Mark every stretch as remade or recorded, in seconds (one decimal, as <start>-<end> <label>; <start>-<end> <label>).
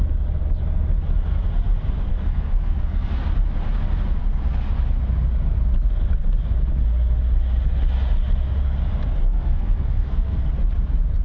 0.0-2.1 recorded; 2.1-3.1 remade; 3.1-9.2 recorded; 9.2-10.5 remade; 10.5-11.2 recorded